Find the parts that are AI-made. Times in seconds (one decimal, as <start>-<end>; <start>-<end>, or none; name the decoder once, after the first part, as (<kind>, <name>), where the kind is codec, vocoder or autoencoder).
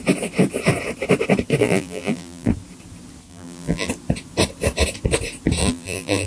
1.6-2.5 (vocoder, BigVGAN v2); 3.3-3.9; 5.6-6.3